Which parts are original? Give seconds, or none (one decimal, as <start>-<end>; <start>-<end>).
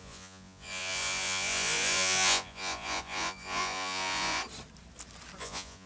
4.4-5.4